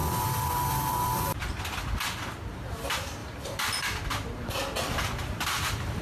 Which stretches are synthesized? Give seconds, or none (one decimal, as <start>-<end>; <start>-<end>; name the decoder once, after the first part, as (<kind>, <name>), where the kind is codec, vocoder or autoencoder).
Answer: 0.0-2.4 (vocoder, BigVGAN v2); 3.2-6.0